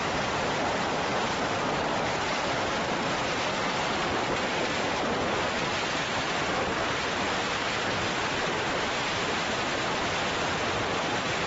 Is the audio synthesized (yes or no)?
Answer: yes